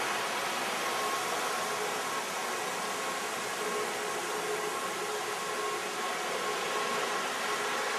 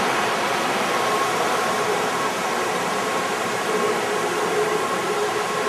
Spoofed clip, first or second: second